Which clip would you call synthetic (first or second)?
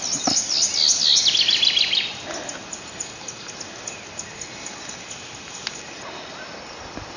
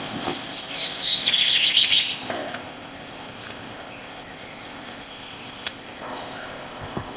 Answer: second